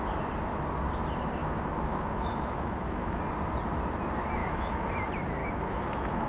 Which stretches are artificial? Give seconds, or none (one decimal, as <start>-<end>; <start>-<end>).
1.4-3.2; 4.4-4.9; 5.4-6.3